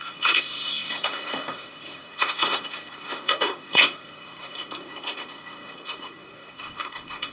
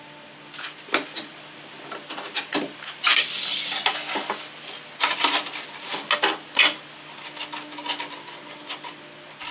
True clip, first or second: second